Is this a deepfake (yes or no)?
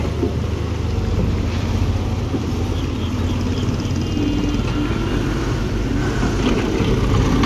no